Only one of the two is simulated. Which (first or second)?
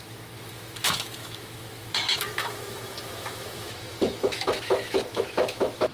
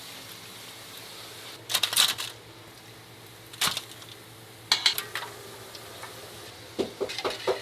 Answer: first